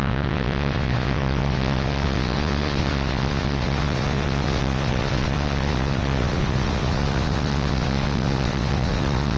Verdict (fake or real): fake